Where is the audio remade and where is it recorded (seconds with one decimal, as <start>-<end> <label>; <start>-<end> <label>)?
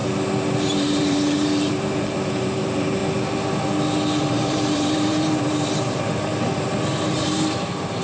0.0-0.6 recorded; 0.6-3.0 remade; 3.0-4.2 recorded; 4.2-6.3 remade; 6.3-7.1 recorded; 7.1-8.0 remade